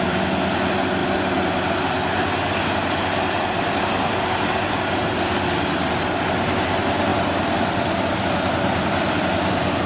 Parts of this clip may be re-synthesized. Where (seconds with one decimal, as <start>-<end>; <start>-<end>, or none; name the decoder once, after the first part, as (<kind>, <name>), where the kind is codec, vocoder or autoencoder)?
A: none